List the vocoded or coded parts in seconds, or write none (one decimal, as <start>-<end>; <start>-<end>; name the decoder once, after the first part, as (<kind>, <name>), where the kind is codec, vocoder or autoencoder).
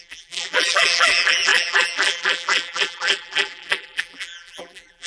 0.0-5.1 (vocoder, BigVGAN v2)